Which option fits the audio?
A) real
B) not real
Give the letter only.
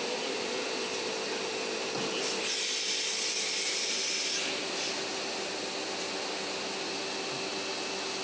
A